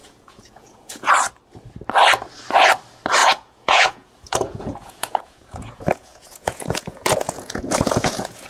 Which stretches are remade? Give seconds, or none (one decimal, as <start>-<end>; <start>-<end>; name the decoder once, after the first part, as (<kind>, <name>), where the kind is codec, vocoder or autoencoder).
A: 0.0-1.1 (vocoder, Vocos); 3.2-8.5